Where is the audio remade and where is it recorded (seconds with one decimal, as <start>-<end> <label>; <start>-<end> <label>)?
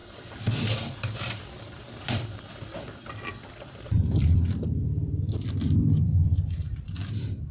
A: 0.0-7.5 remade